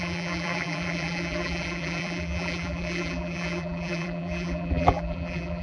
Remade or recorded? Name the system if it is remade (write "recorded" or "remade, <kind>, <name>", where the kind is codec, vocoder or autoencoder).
remade, vocoder, BigVGAN v2